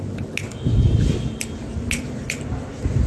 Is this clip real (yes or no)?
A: yes